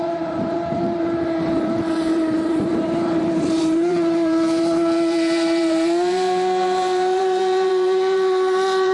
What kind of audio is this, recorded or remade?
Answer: remade